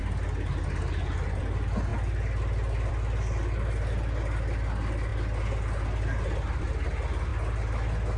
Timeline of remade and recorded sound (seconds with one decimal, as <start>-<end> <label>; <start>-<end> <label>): 0.0-8.2 recorded